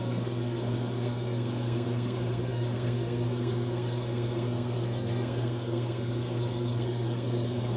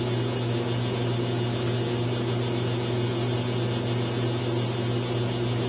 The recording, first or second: second